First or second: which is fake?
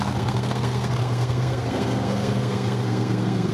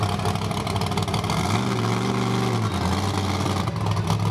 first